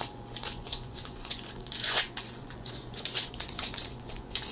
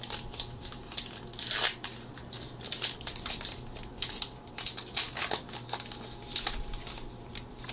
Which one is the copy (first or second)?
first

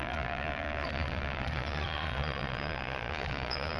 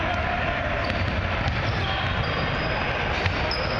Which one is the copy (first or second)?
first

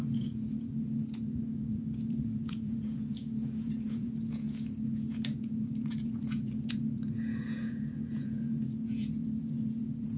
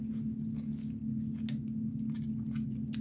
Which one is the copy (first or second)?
first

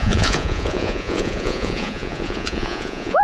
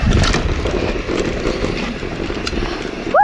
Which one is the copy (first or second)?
first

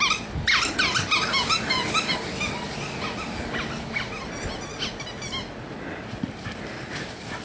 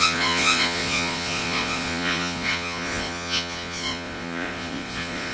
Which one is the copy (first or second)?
second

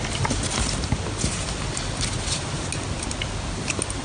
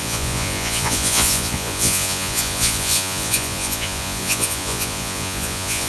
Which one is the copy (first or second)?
second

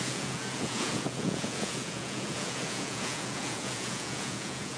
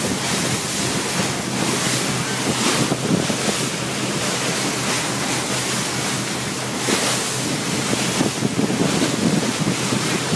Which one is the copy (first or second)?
first